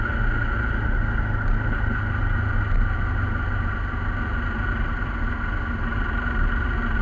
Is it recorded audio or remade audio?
recorded